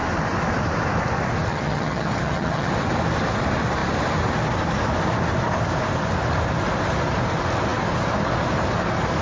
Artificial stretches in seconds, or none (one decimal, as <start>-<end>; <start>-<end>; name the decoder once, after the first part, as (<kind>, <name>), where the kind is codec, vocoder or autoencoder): 1.5-2.7 (vocoder, HiFi-GAN)